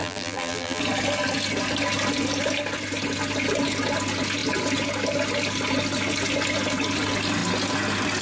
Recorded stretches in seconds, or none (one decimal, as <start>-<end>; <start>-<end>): 0.8-8.2